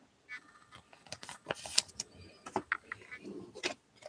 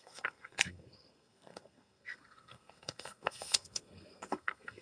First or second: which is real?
first